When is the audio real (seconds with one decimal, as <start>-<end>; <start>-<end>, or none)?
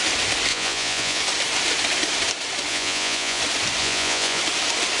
0.0-0.5; 1.2-2.7; 3.4-3.8; 4.4-5.0